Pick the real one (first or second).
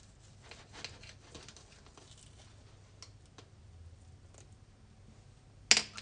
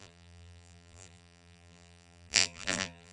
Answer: first